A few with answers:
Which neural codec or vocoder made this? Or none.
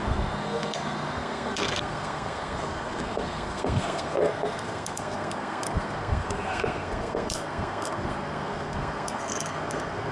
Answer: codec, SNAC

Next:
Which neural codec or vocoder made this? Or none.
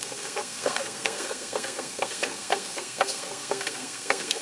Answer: codec, SNAC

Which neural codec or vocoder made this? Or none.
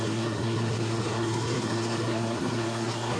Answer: codec, SNAC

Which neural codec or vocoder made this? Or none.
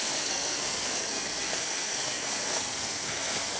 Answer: codec, SNAC